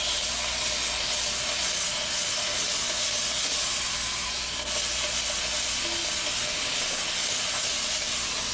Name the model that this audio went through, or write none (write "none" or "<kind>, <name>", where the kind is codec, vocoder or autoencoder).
none